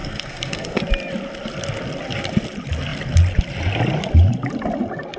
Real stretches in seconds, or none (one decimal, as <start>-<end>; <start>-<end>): 0.8-5.2